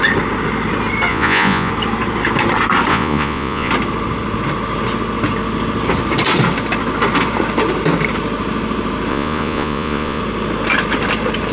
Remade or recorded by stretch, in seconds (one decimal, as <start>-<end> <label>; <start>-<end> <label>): 0.0-1.1 recorded; 1.1-1.7 remade; 1.7-2.9 recorded; 2.9-3.7 remade; 3.7-9.1 recorded; 9.1-10.2 remade; 10.2-11.5 recorded